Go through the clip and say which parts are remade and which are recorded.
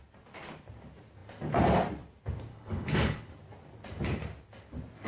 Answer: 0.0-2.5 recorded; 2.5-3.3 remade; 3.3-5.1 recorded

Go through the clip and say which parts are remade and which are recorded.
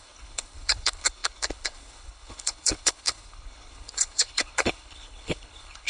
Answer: 0.0-5.9 remade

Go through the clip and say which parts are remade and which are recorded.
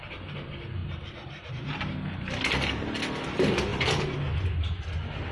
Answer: 0.0-5.3 recorded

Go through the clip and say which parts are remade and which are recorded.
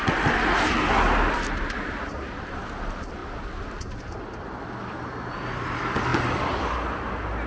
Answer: 0.0-7.5 recorded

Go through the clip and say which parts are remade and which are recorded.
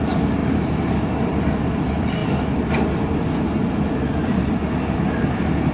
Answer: 0.0-5.7 recorded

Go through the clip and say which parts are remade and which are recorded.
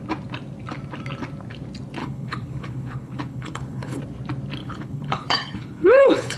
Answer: 0.0-2.0 recorded; 2.0-4.0 remade; 4.0-4.6 recorded; 4.6-6.4 remade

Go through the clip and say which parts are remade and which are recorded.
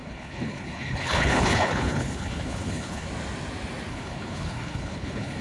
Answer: 0.0-3.1 remade; 3.1-3.9 recorded; 3.9-5.4 remade